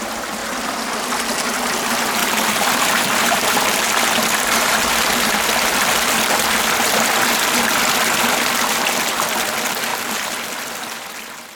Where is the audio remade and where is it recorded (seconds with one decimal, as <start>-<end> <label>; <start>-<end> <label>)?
0.0-2.2 recorded; 2.2-6.6 remade; 6.6-9.9 recorded; 9.9-10.7 remade; 10.7-11.6 recorded